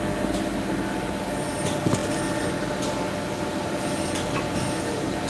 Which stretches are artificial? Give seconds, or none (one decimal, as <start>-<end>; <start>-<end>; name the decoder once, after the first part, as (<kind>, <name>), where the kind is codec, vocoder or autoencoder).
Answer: none